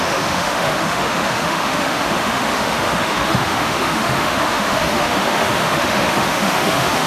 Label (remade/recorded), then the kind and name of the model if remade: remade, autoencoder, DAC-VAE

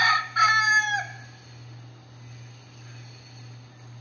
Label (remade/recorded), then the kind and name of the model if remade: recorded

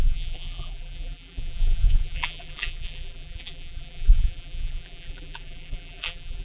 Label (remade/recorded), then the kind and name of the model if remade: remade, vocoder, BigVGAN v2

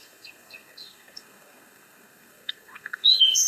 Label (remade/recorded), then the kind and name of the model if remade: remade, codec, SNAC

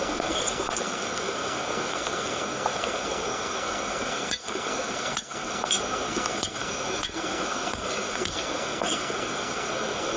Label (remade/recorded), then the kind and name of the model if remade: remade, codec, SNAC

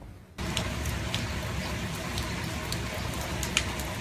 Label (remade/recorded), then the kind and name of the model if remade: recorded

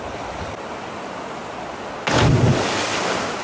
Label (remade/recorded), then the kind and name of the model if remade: recorded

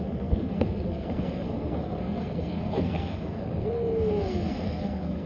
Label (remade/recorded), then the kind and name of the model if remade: remade, codec, SNAC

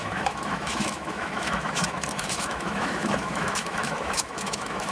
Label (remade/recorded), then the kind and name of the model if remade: remade, autoencoder, DAC-VAE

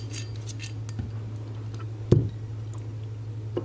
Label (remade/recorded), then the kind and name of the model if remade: recorded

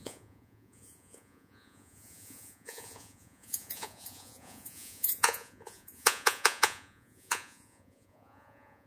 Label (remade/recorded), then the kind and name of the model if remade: remade, vocoder, Vocos